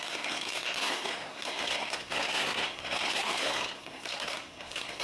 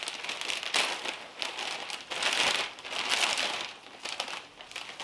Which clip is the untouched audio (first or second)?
second